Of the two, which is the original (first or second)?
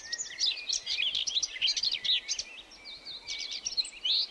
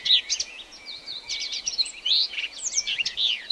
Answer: first